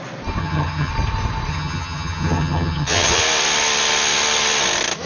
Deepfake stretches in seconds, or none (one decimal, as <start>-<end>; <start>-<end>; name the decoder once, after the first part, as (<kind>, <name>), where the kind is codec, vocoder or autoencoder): 0.4-0.9 (vocoder, HiFi-GAN); 1.5-3.2